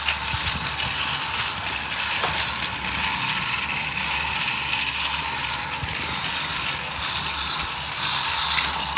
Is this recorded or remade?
recorded